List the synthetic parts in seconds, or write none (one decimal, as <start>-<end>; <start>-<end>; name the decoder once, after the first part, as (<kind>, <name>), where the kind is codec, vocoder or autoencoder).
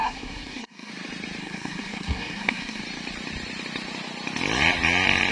0.0-0.9 (codec, SNAC); 1.4-2.8